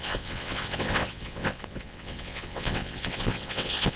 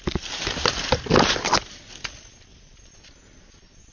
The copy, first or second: first